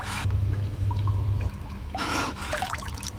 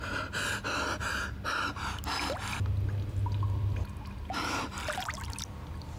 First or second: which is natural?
second